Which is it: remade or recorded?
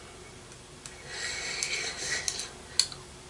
recorded